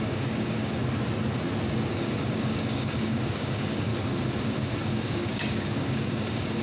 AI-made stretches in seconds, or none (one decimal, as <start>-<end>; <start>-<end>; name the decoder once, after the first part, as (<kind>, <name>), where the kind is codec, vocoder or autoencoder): 0.0-0.8 (codec, DAC); 1.9-3.9; 4.4-6.6